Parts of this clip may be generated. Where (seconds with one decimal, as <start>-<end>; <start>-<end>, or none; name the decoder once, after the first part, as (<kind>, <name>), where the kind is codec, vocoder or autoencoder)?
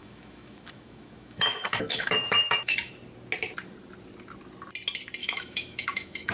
0.0-2.9 (autoencoder, DAC-VAE); 5.2-6.3